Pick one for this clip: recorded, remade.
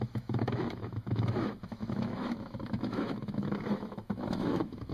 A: remade